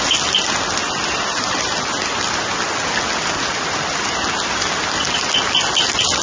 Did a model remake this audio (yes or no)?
no